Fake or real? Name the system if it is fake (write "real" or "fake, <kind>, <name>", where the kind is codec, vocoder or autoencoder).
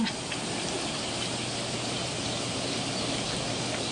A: real